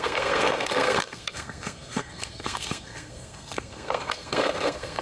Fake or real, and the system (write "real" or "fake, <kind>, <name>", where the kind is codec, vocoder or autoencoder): fake, codec, SNAC